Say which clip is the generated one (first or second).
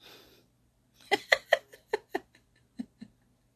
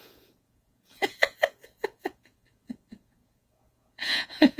second